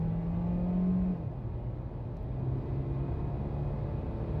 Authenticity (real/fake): real